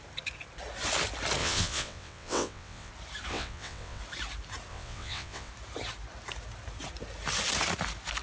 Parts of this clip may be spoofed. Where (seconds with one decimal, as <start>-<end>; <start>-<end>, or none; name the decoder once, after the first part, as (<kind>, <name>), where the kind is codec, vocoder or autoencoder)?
1.4-2.9 (vocoder, WaveNeXt); 3.3-4.0; 4.7-5.5